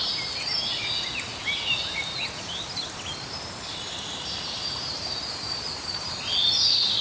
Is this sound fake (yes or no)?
no